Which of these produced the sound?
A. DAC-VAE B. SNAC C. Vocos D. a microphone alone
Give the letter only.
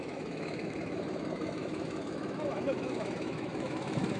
A